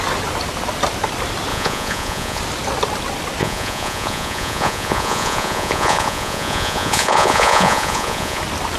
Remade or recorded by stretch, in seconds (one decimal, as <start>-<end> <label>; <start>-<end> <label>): 0.0-1.5 recorded; 1.5-2.4 remade; 2.4-3.4 recorded; 3.4-8.4 remade; 8.4-8.8 recorded